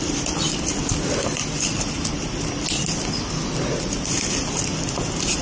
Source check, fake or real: real